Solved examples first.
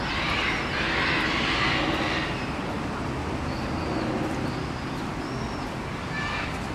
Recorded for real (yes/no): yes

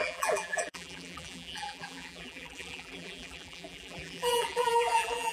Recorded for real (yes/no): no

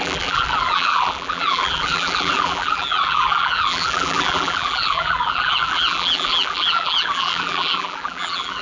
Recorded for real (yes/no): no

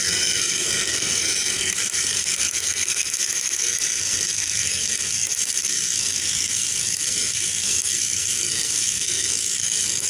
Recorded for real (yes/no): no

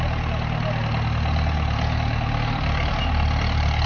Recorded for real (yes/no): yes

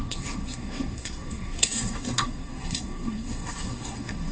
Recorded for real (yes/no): no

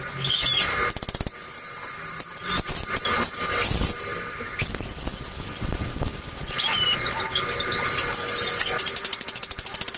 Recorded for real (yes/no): yes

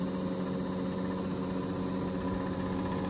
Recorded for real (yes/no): yes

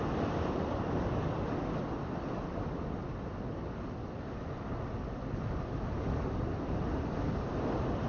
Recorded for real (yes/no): yes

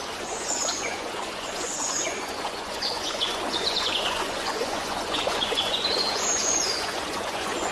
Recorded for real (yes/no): no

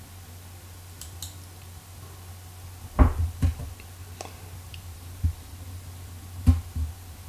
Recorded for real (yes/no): yes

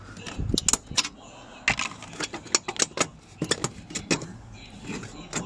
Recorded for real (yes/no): yes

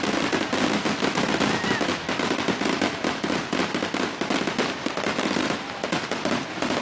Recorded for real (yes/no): yes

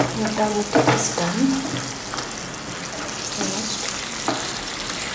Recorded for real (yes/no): yes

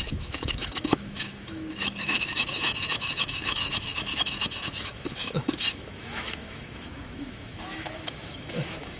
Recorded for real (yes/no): no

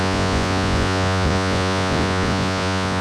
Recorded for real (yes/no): no